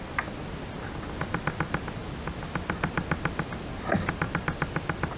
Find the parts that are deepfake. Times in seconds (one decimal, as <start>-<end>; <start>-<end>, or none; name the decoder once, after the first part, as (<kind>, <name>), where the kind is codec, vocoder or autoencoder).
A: 2.0-4.4 (vocoder, BigVGAN v2)